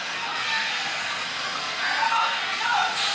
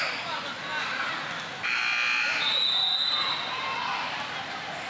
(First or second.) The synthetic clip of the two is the first